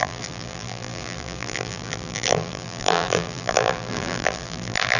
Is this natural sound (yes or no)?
no